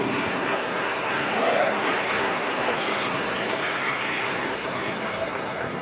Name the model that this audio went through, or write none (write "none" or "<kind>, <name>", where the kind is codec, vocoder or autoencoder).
codec, SNAC